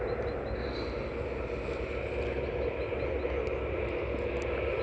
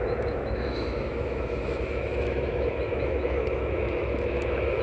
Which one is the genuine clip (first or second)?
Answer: first